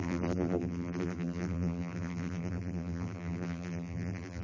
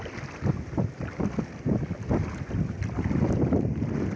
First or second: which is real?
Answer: second